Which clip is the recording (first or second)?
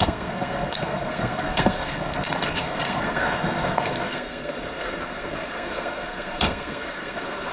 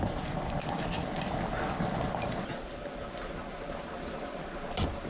second